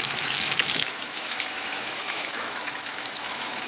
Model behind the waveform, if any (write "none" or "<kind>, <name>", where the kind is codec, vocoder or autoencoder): autoencoder, DAC-VAE